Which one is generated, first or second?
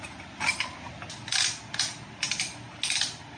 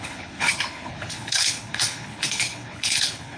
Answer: second